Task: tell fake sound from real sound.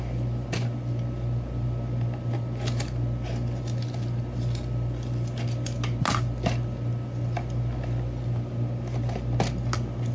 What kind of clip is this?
real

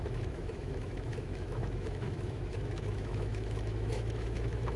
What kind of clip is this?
fake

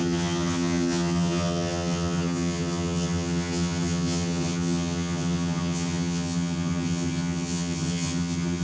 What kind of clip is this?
fake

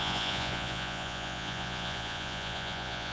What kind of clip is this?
fake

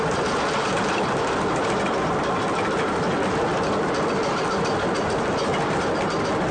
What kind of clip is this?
real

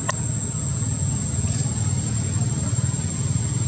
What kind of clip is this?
real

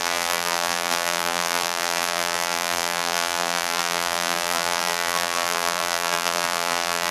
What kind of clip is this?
fake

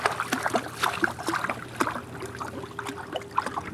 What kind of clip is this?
real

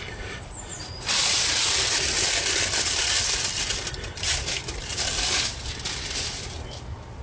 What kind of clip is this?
real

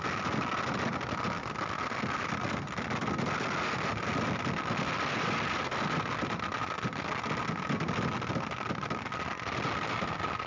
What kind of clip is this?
real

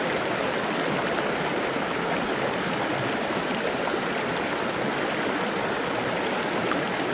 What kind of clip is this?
real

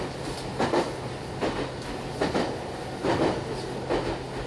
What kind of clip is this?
real